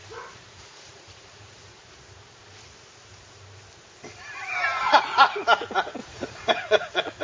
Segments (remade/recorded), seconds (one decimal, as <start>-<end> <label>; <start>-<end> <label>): 0.0-0.5 recorded; 0.5-1.8 remade; 1.8-4.8 recorded; 4.8-7.2 remade